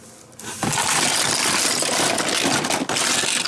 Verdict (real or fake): real